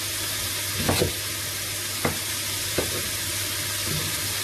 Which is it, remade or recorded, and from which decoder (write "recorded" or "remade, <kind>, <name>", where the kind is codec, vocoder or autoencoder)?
recorded